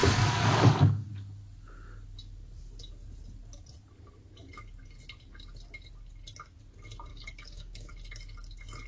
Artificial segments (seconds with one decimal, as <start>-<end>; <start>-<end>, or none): 0.0-1.1; 7.1-7.9